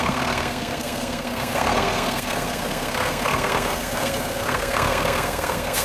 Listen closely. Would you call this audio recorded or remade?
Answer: remade